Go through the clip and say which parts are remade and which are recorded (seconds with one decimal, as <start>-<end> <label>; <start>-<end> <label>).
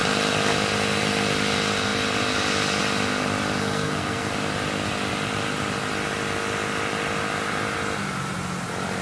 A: 0.0-3.6 recorded; 3.6-4.3 remade; 4.3-9.0 recorded